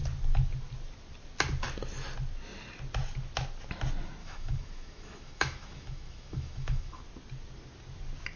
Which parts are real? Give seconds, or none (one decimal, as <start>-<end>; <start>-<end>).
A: 0.0-4.2; 7.0-8.4